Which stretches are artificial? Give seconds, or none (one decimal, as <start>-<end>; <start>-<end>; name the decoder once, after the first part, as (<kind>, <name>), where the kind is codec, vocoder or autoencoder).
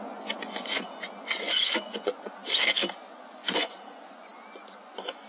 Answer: 0.0-2.4 (vocoder, Vocos); 3.1-5.3